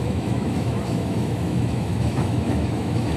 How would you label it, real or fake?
fake